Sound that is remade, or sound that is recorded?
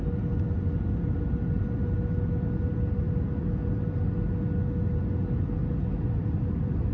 recorded